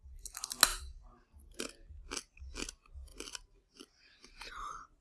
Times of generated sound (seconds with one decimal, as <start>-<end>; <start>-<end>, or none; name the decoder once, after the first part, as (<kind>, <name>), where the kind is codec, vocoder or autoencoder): 0.7-2.0 (vocoder, BigVGAN v2); 3.1-4.5